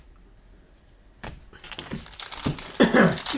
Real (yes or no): yes